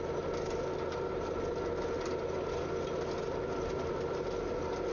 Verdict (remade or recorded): recorded